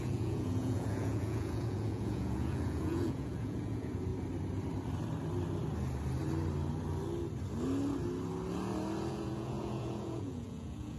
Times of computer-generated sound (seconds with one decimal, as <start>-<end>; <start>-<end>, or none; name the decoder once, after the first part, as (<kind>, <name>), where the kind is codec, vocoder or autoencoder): 0.0-4.1 (vocoder, Vocos); 9.1-11.0